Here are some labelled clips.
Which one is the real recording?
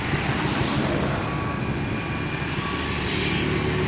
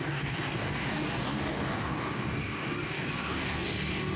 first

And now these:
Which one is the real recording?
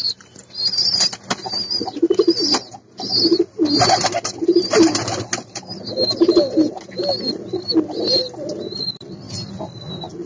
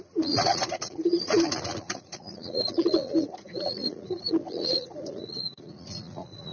first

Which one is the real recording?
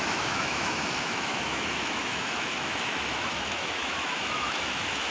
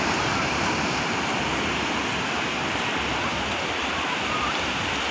second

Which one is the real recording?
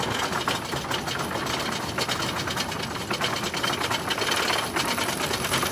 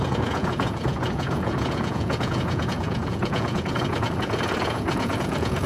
first